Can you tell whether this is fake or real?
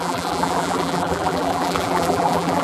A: fake